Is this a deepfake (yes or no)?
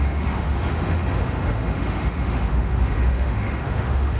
yes